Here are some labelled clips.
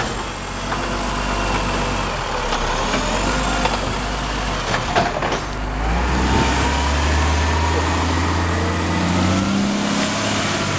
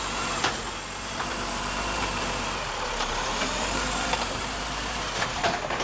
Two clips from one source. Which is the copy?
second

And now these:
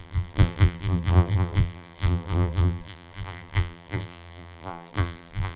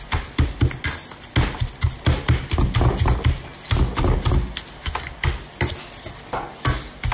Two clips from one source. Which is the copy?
first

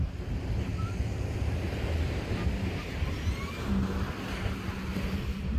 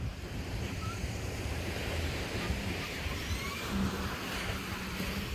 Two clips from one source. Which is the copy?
second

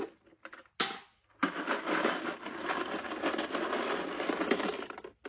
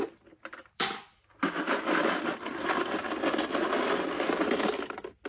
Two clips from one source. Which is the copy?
second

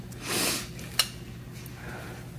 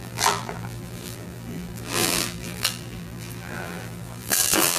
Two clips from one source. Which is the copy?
second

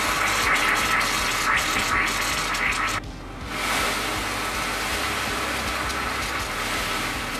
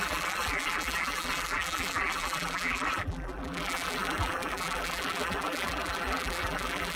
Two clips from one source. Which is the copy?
second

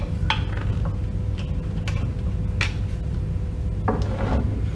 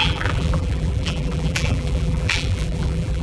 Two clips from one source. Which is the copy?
second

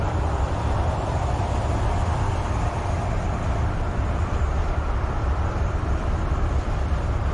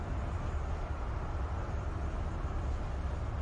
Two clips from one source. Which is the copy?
first